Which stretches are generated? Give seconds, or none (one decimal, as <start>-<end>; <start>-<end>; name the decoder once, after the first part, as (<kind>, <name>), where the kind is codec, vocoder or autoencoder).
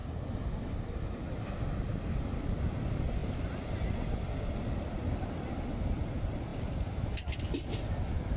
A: none